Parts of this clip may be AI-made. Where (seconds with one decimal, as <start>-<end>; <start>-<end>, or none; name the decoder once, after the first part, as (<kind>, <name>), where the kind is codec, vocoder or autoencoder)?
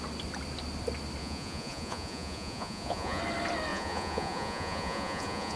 1.2-3.2 (vocoder, Vocos); 3.7-5.6